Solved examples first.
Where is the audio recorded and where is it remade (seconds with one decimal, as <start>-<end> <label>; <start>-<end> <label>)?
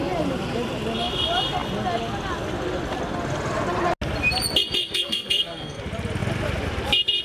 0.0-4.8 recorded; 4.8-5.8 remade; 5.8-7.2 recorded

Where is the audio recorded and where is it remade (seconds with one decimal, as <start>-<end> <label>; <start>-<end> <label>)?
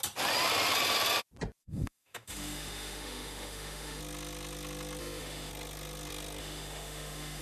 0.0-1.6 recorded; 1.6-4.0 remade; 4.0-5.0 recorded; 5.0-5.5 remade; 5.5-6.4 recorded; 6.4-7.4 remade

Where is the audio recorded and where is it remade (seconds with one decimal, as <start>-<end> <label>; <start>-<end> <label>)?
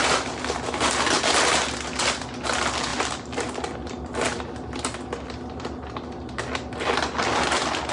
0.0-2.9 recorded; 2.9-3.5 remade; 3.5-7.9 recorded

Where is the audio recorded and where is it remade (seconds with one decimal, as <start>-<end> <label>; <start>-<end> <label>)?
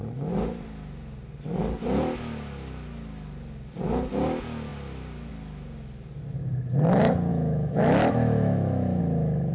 0.0-7.3 recorded; 7.3-9.0 remade; 9.0-9.5 recorded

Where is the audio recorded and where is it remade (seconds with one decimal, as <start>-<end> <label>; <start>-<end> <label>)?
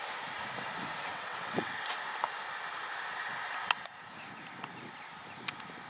0.0-1.1 recorded; 1.1-1.8 remade; 1.8-5.9 recorded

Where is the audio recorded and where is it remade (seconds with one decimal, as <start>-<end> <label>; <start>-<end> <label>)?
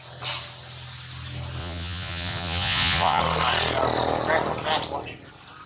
0.0-1.6 recorded; 1.6-3.2 remade; 3.2-5.7 recorded